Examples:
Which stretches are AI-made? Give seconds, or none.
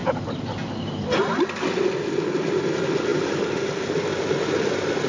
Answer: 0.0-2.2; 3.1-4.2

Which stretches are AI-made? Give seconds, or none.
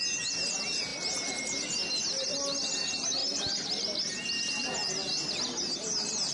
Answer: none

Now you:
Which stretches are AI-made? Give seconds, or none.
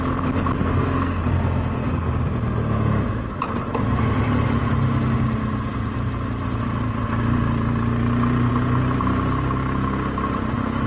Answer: 0.6-1.2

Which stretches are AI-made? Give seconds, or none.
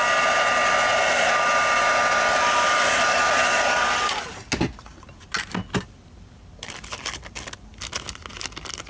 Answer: none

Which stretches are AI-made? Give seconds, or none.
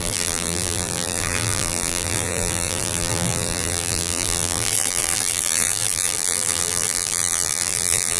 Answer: 0.0-8.2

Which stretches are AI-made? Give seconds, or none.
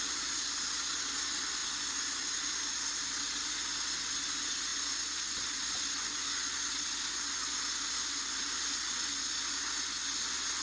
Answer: none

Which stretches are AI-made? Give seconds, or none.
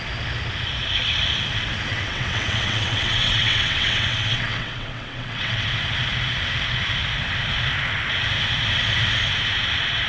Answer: 1.9-5.6